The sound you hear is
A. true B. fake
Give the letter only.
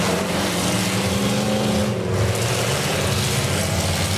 A